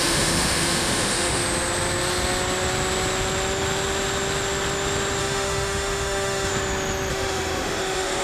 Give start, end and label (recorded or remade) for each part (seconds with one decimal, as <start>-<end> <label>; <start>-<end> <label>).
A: 0.0-1.4 remade; 1.4-5.2 recorded; 5.2-6.5 remade; 6.5-7.1 recorded; 7.1-8.2 remade